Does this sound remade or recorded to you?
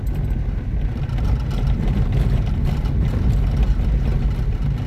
recorded